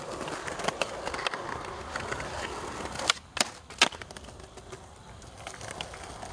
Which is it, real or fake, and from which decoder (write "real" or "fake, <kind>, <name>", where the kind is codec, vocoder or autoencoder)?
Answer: real